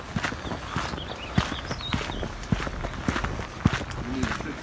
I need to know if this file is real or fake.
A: real